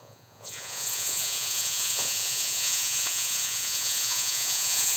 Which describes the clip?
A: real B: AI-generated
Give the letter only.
B